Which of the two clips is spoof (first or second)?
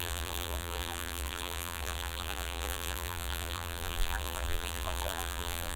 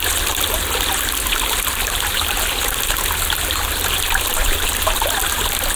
first